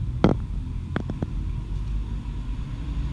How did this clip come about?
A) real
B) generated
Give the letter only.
A